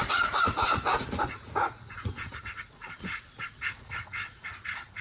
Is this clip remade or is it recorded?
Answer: remade